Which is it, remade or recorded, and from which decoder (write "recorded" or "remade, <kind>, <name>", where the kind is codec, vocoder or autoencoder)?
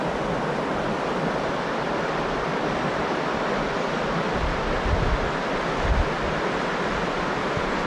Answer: recorded